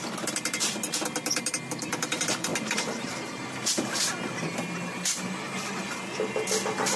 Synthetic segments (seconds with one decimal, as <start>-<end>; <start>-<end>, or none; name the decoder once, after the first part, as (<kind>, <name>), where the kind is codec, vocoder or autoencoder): none